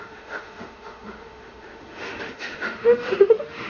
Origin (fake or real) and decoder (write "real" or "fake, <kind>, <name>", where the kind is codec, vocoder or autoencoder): fake, autoencoder, DAC-VAE